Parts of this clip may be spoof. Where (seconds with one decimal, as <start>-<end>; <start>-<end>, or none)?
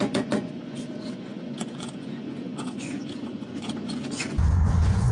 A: 0.0-5.1